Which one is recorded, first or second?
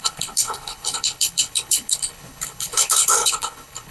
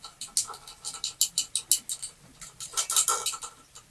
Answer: second